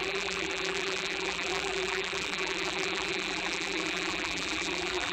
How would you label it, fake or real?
fake